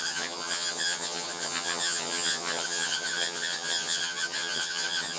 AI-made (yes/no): yes